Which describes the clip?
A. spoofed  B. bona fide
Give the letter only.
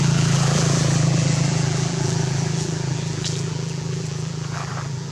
A